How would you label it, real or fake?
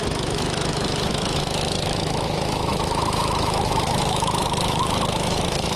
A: fake